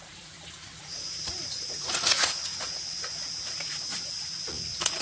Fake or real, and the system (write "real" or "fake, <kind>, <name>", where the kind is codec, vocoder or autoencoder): fake, vocoder, Vocos